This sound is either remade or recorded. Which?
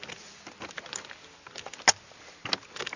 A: recorded